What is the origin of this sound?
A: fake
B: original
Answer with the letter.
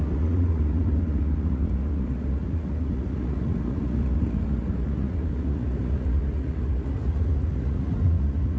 A